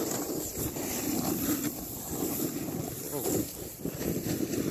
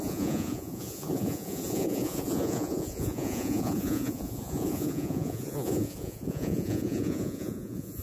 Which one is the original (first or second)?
first